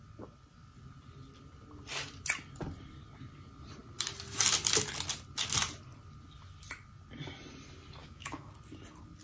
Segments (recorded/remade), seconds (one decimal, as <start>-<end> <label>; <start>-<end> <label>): 0.0-8.0 recorded; 8.0-8.5 remade; 8.5-9.2 recorded